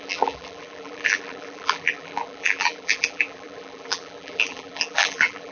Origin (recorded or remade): remade